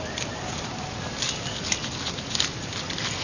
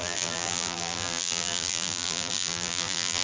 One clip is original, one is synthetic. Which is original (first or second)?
first